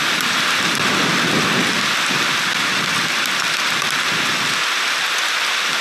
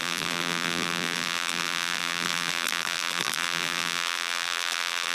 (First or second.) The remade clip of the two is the second